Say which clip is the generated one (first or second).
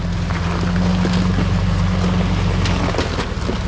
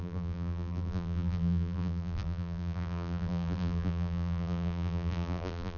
second